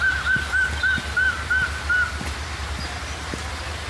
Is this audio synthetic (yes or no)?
no